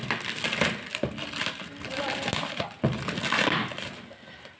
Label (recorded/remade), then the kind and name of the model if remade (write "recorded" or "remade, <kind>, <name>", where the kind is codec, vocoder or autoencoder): recorded